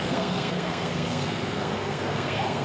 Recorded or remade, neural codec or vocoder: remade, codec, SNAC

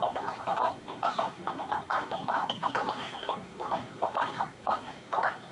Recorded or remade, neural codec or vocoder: remade, codec, SNAC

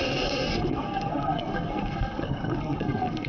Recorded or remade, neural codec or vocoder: remade, codec, SNAC